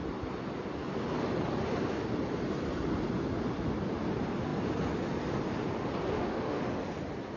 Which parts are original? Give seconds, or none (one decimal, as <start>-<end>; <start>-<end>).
0.0-6.1; 6.6-7.4